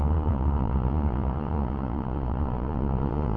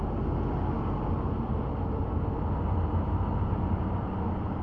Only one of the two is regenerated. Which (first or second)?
first